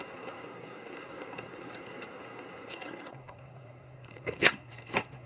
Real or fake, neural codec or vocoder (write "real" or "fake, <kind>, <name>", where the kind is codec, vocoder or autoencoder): fake, codec, SNAC